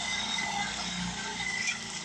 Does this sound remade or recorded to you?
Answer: remade